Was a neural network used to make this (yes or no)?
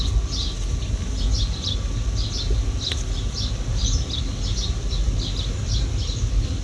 no